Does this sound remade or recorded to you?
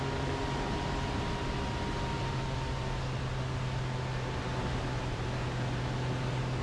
recorded